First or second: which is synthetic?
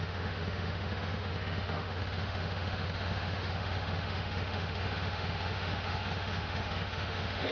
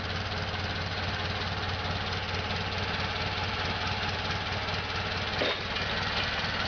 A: first